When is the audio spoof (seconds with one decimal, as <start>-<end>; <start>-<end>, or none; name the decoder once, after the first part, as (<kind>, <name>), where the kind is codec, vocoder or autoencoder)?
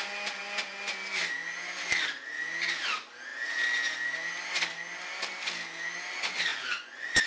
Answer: 6.5-7.3 (vocoder, Vocos)